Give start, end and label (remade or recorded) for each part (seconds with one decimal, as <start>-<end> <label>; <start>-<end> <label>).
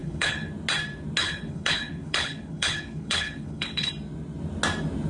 0.0-0.5 remade; 0.5-1.2 recorded; 1.2-3.9 remade; 3.9-5.1 recorded